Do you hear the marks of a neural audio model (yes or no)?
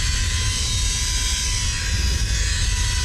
no